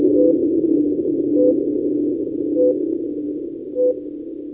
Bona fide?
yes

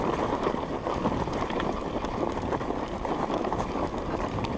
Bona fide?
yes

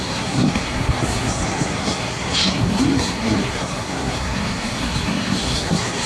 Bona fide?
no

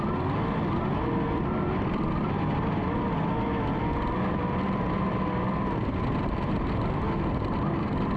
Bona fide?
yes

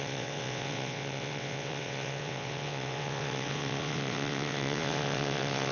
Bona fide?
no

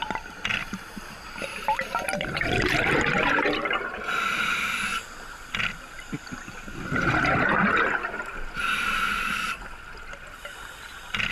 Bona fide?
yes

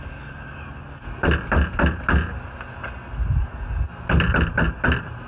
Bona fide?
yes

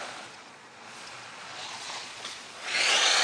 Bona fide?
no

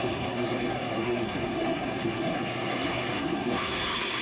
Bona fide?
no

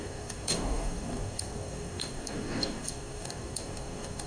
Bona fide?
no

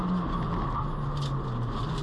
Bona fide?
yes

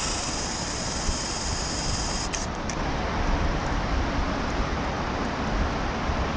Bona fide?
yes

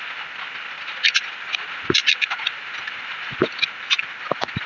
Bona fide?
yes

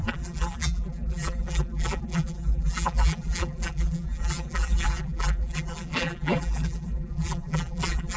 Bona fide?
no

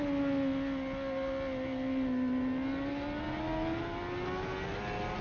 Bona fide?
yes